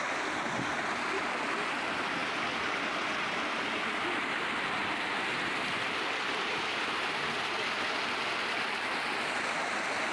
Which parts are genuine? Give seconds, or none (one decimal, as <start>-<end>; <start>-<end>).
0.0-10.1